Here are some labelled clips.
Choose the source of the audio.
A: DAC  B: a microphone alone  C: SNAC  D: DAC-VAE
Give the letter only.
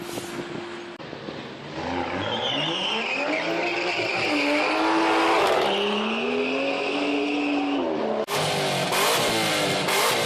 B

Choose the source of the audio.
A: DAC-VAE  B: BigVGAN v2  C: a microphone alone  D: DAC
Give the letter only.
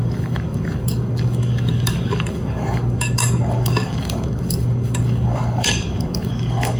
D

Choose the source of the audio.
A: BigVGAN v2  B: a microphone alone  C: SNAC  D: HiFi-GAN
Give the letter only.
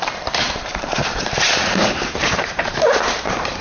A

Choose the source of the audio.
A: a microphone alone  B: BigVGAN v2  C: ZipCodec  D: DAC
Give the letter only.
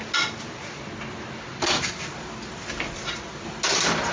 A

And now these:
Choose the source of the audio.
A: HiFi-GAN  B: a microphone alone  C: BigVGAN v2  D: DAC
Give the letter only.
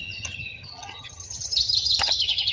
A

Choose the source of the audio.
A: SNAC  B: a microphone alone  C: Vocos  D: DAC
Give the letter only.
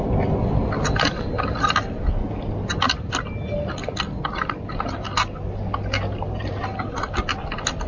B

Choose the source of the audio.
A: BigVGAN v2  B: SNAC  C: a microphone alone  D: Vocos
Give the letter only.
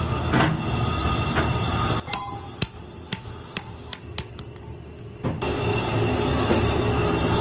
C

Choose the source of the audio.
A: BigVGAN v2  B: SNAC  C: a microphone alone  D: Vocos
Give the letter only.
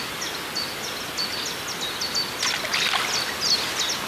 C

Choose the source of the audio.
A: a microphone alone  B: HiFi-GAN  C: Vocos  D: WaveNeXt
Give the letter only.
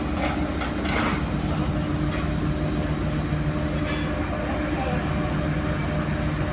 A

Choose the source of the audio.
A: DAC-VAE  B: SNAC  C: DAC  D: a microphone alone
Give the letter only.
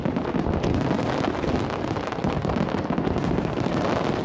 D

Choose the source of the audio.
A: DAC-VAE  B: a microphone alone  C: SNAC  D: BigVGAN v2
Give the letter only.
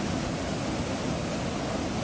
B